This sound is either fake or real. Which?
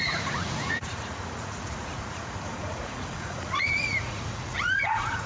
fake